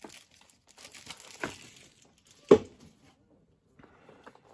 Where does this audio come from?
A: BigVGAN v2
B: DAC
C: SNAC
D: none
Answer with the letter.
D